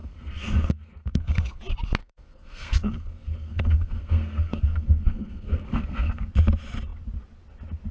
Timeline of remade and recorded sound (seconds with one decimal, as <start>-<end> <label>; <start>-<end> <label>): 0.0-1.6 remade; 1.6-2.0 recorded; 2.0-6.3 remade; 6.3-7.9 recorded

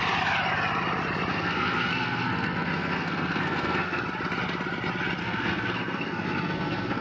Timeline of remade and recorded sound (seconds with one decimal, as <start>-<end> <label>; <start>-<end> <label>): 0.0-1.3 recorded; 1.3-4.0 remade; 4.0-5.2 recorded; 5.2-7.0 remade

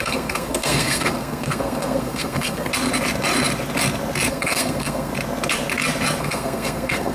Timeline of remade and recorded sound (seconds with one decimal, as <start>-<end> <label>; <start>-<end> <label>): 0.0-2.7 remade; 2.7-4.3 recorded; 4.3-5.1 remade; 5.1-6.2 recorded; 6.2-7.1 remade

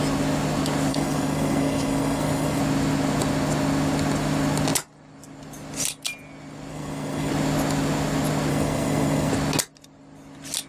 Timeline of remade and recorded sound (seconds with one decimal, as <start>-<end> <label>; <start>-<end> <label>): 0.0-0.9 recorded; 0.9-2.6 remade; 2.6-6.7 recorded; 6.7-7.3 remade; 7.3-8.5 recorded; 8.5-9.3 remade; 9.3-10.7 recorded